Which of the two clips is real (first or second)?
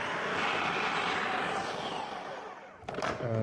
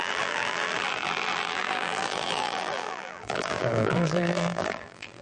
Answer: first